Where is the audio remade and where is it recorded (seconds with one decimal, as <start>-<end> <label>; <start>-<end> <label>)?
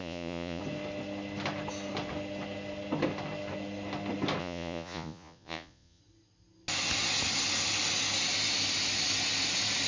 0.0-0.6 remade; 0.6-4.4 recorded; 4.4-6.0 remade; 6.0-9.9 recorded